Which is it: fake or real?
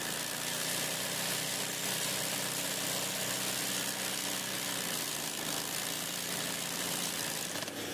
real